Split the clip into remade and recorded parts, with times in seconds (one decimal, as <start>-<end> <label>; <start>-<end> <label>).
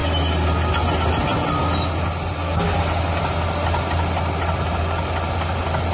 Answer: 0.0-5.9 recorded